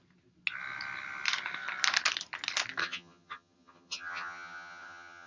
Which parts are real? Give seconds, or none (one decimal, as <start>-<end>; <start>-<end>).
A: 0.0-2.8